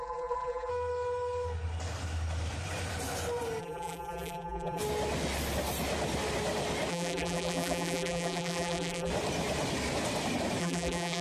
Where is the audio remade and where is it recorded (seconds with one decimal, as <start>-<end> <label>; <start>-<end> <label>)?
0.0-0.7 remade; 0.7-3.6 recorded; 3.6-4.8 remade; 4.8-6.9 recorded; 6.9-9.1 remade; 9.1-10.6 recorded; 10.6-11.2 remade